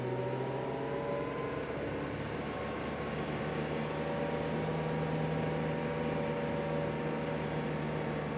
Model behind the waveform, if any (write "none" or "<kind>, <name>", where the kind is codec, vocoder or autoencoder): none